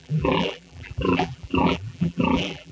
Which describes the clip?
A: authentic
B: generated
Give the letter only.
B